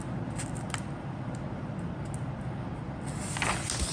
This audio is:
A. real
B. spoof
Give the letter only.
A